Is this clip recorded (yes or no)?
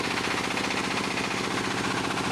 yes